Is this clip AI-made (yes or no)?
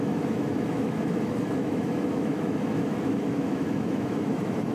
yes